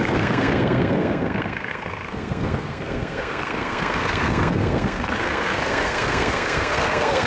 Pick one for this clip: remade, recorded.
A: remade